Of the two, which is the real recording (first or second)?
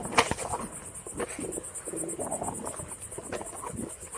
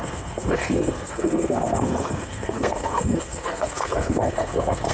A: first